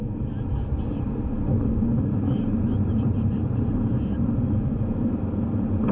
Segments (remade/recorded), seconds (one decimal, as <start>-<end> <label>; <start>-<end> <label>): 0.0-1.9 recorded; 1.9-5.4 remade; 5.4-5.9 recorded